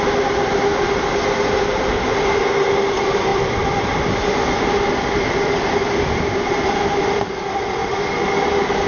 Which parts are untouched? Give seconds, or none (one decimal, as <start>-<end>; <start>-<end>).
0.0-3.3; 6.5-8.9